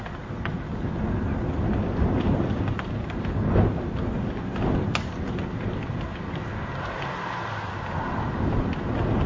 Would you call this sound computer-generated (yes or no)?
no